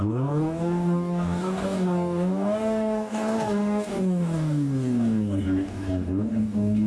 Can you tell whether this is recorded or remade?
remade